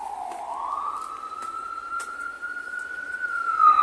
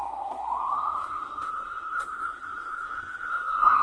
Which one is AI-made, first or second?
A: second